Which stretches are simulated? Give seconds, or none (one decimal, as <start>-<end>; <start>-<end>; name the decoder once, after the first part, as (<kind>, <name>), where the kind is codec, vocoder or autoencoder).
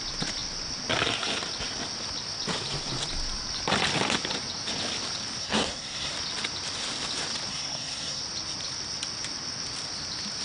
5.4-6.1 (codec, SNAC); 7.5-8.2